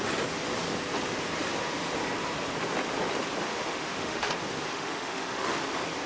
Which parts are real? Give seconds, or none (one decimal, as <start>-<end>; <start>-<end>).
0.0-3.5; 4.3-4.7; 5.6-6.1